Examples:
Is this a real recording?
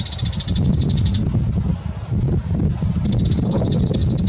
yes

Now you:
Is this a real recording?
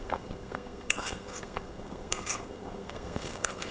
no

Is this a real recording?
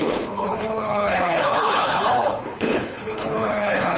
no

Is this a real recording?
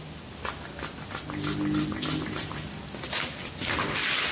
yes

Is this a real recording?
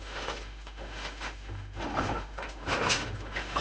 no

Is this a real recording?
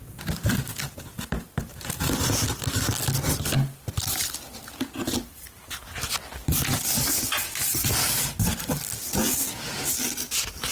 yes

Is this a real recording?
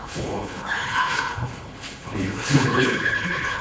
no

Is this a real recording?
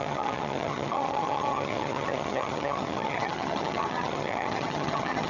no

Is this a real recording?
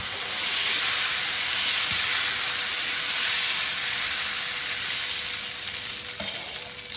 yes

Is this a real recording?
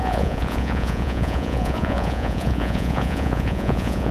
no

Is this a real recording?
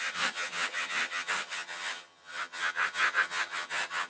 no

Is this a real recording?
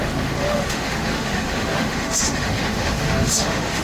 no